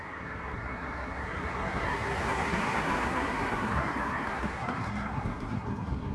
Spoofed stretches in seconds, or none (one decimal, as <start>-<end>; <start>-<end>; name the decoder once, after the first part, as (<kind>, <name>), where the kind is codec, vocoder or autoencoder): 0.0-6.1 (codec, SNAC)